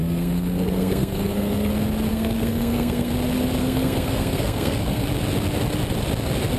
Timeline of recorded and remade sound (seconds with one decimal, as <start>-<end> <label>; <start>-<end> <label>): 0.0-1.7 remade; 1.7-2.1 recorded; 2.1-3.1 remade; 3.1-3.6 recorded; 3.6-5.1 remade; 5.1-6.6 recorded